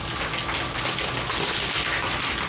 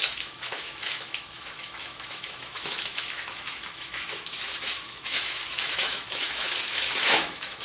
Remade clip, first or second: second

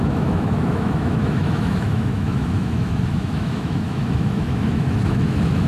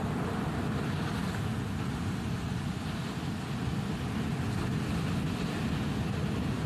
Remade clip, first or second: first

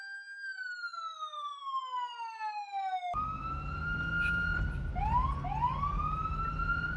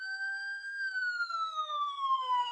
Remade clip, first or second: second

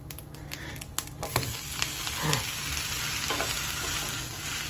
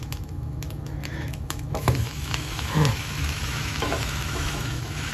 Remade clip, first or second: second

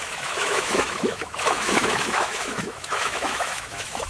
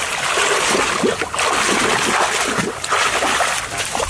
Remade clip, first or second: first